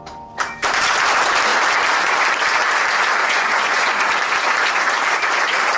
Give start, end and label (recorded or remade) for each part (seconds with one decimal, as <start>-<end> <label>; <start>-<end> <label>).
0.0-3.2 recorded; 3.2-4.0 remade; 4.0-5.8 recorded